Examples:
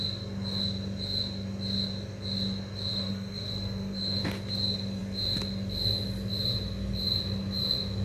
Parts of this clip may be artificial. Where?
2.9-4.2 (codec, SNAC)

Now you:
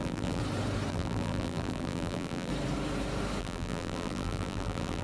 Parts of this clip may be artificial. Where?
0.0-0.4 (vocoder, BigVGAN v2); 0.9-2.5; 3.4-5.0

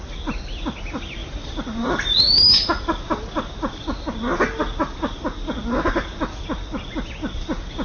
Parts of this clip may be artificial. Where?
1.2-2.3 (vocoder, BigVGAN v2)

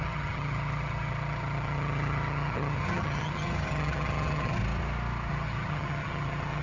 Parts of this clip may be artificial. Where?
0.0-4.6 (vocoder, HiFi-GAN); 5.3-6.6